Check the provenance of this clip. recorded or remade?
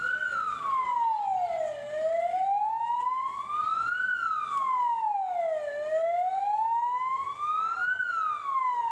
recorded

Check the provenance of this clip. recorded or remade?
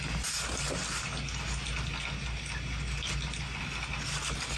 recorded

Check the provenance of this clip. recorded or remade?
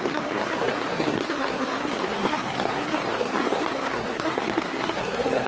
remade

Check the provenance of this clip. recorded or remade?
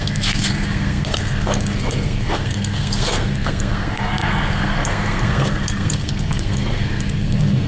remade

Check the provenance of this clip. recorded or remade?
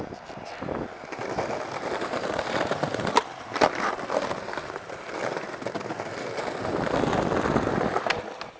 recorded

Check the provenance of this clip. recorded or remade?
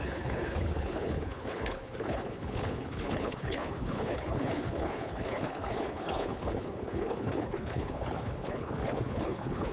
remade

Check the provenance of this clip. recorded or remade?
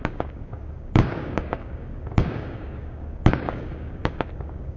remade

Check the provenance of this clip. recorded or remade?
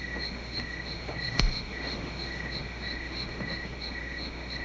remade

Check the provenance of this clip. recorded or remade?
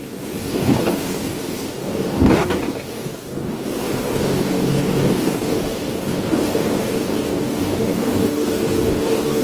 remade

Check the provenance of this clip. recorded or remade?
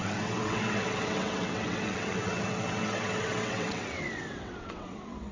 remade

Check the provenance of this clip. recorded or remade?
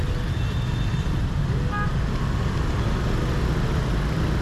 recorded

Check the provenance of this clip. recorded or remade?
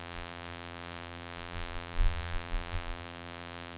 remade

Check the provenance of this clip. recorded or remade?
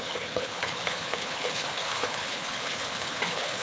remade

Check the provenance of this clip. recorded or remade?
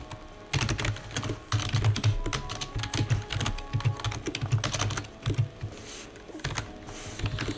recorded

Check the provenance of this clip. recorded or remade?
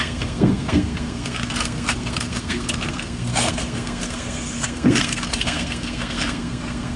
remade